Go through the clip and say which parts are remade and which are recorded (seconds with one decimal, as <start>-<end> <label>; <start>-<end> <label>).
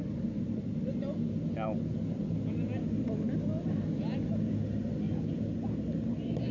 0.0-6.5 recorded